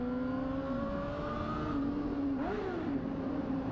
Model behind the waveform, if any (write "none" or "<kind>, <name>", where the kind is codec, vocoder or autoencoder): none